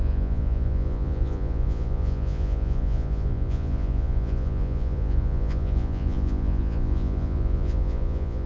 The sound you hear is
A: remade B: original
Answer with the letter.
A